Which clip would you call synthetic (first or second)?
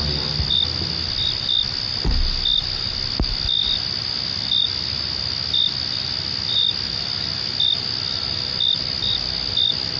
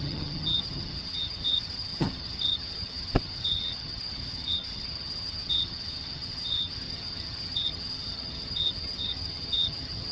second